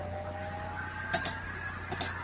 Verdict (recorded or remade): recorded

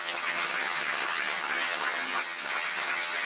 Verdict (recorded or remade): remade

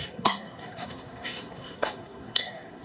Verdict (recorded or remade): remade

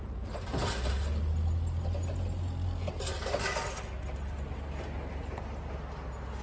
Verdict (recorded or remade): recorded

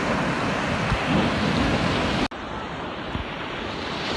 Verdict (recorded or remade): recorded